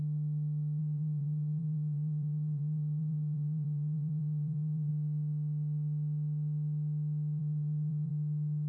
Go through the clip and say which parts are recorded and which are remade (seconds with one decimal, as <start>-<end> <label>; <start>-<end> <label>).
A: 0.0-0.8 recorded; 0.8-4.9 remade; 4.9-7.4 recorded; 7.4-8.1 remade; 8.1-8.7 recorded